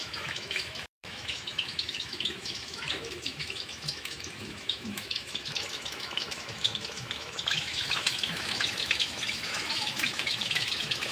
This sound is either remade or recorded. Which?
remade